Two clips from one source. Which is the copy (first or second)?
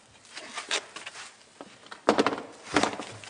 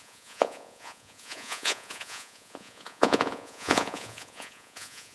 second